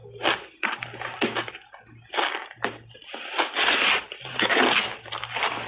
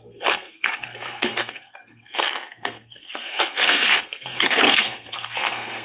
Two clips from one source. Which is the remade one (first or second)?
second